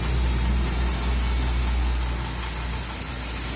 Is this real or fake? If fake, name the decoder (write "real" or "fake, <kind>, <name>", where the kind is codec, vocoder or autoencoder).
real